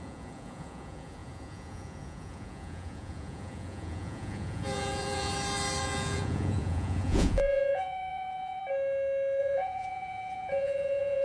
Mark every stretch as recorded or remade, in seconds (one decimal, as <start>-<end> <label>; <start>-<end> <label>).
0.0-5.3 remade; 5.3-5.8 recorded; 5.8-8.6 remade; 8.6-9.4 recorded; 9.4-11.2 remade